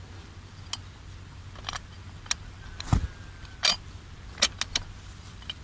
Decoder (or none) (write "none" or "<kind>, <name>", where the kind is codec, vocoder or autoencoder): none